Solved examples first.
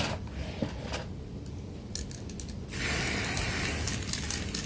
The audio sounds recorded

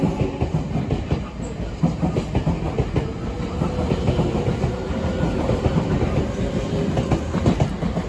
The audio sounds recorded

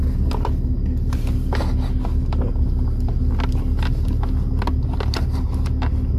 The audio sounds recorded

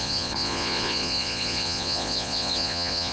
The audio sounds remade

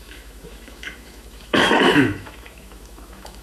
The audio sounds remade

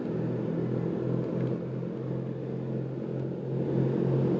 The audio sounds recorded